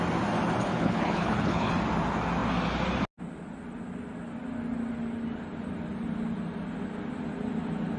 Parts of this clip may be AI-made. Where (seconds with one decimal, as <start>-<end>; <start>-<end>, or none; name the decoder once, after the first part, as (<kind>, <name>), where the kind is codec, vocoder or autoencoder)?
0.7-1.7 (codec, HILCodec)